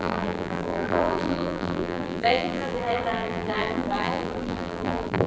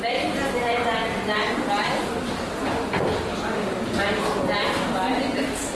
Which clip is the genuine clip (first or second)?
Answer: second